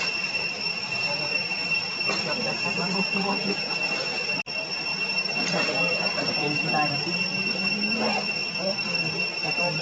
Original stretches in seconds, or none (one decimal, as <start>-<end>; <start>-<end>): 0.0-9.8